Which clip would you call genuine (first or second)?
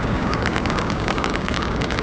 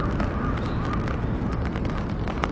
second